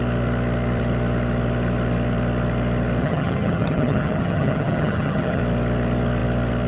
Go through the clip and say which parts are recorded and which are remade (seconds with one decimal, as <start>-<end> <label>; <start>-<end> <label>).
0.0-3.0 recorded; 3.0-5.4 remade; 5.4-6.7 recorded